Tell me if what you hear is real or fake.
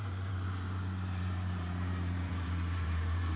fake